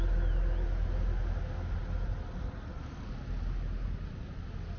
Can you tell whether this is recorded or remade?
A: recorded